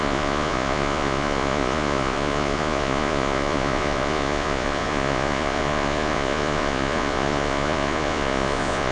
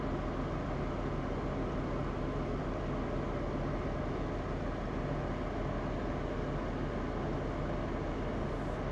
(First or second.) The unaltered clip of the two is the second